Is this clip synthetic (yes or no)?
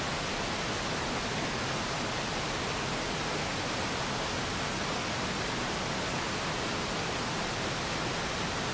no